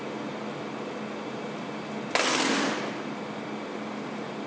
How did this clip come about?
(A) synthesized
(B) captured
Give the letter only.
B